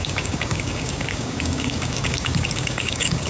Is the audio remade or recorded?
remade